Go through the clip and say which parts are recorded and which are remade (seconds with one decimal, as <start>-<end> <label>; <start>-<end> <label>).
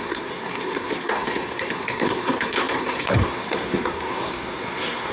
0.0-5.1 remade